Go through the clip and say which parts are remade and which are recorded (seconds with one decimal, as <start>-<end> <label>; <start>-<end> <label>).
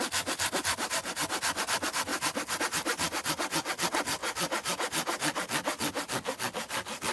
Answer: 0.0-7.1 recorded